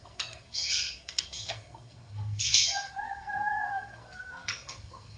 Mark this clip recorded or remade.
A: remade